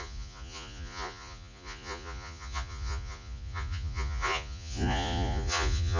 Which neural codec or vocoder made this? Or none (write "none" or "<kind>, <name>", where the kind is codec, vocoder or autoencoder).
vocoder, Vocos